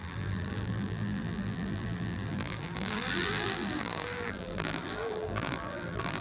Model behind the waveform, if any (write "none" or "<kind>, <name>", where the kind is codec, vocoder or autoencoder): vocoder, BigVGAN v2